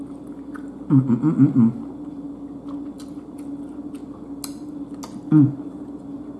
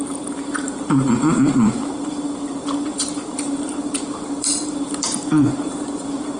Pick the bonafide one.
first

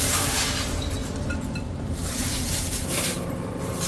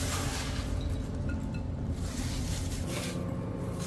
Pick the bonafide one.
second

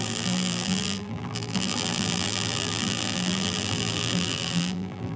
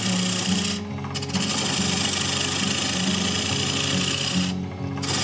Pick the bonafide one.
second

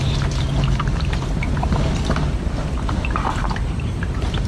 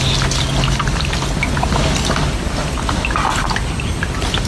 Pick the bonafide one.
second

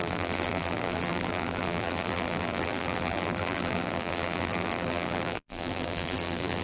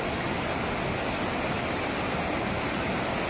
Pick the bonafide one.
second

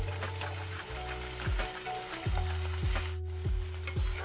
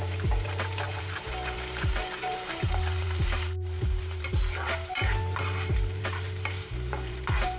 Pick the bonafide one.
first